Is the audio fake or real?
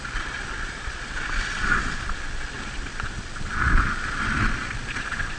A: fake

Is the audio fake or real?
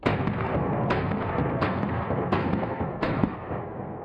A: fake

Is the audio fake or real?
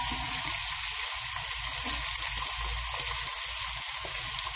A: real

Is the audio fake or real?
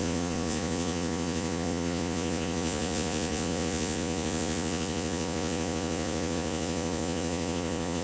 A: fake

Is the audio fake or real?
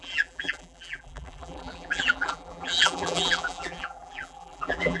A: fake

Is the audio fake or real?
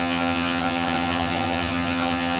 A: fake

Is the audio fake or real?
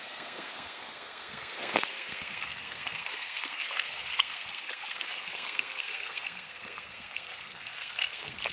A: fake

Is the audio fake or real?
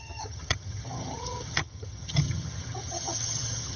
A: fake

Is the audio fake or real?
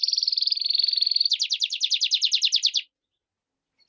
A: real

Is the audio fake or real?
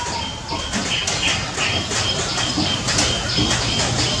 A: real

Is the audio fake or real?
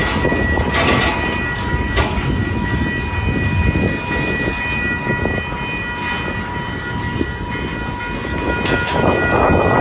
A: real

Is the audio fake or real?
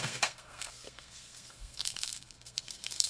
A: fake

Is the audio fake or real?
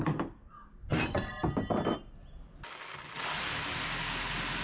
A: real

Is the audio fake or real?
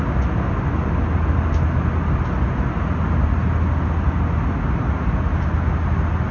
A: real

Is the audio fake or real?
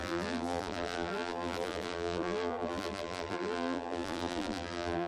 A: fake